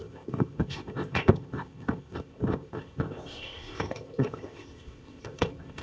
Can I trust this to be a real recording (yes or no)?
no